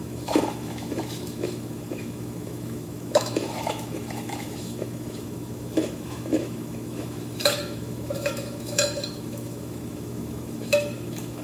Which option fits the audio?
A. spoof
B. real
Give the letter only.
A